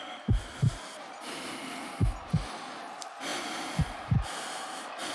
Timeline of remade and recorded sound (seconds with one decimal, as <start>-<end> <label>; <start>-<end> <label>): 0.0-5.1 recorded